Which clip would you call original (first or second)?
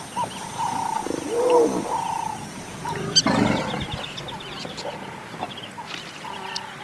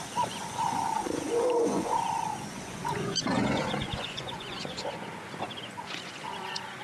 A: first